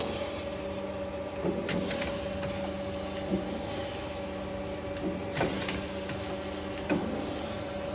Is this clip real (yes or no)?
yes